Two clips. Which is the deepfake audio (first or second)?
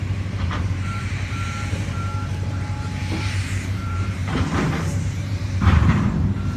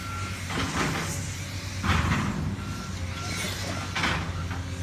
first